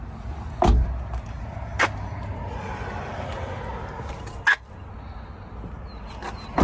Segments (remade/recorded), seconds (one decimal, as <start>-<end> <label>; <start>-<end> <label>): 0.0-2.3 recorded; 2.3-4.1 remade; 4.1-6.6 recorded